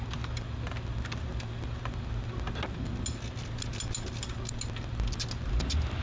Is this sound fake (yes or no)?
no